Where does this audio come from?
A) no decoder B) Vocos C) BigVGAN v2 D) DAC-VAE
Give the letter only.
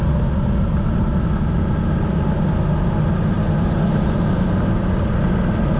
A